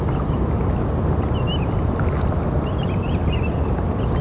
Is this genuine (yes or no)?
yes